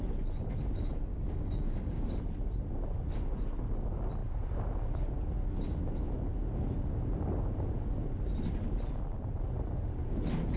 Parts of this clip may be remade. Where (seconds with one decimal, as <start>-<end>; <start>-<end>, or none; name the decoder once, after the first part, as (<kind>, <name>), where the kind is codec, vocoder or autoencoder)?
1.1-2.1 (codec, DAC)